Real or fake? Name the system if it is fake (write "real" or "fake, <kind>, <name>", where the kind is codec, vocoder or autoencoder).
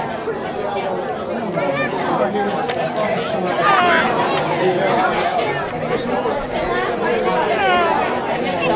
real